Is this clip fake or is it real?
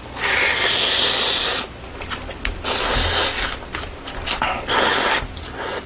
real